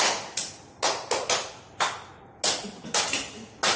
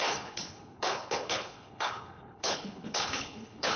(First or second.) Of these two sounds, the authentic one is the first